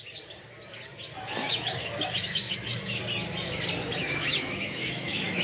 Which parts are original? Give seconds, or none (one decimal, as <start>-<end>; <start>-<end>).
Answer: 0.0-1.4; 3.0-4.0